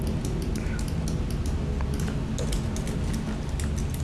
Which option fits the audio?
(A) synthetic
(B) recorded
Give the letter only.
B